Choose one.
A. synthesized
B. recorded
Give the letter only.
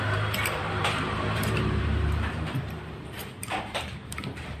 A